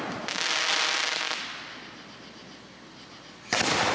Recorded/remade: recorded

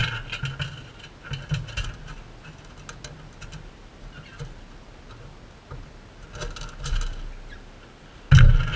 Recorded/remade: recorded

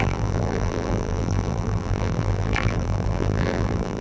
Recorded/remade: remade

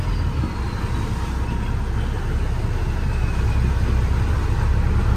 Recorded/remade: recorded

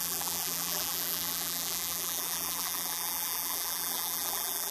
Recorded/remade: remade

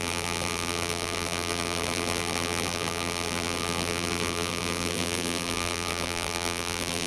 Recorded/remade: remade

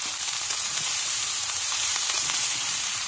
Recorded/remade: remade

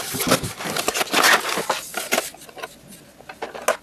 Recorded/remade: recorded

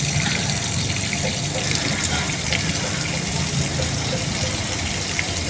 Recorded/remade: recorded